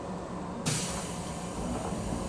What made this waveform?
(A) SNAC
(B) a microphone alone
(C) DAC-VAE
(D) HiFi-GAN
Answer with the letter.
B